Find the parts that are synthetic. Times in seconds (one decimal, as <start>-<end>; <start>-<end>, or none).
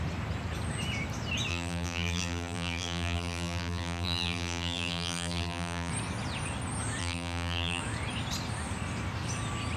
1.5-5.9; 7.0-7.8